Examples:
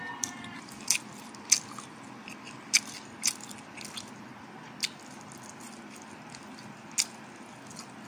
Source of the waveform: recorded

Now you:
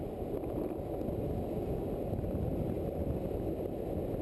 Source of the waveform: recorded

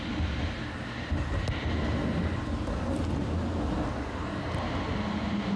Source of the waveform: recorded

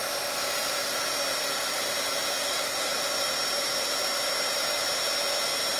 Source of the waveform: recorded